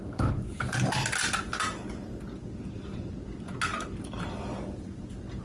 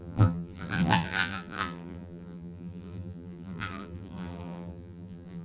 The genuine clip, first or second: first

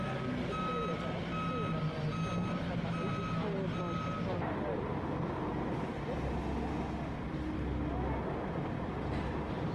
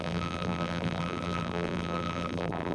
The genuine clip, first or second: first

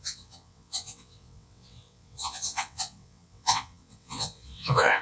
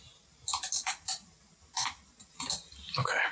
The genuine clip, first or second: second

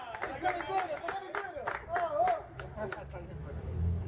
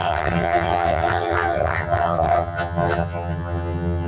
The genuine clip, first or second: first